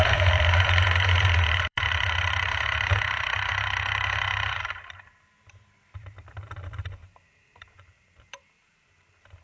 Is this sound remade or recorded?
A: remade